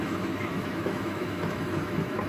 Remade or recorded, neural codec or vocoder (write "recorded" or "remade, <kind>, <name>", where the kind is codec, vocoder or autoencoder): remade, autoencoder, DAC-VAE